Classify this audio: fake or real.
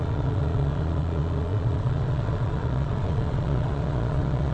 fake